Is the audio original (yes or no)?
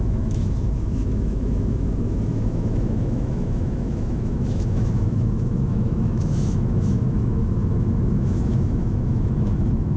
no